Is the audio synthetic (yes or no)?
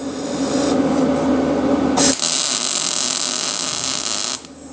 no